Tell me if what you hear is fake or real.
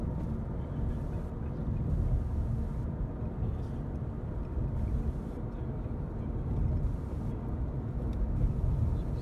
real